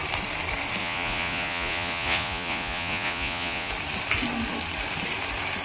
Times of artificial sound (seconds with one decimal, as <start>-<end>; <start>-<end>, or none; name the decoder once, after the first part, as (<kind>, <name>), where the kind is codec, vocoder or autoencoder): 0.8-3.7 (vocoder, Vocos)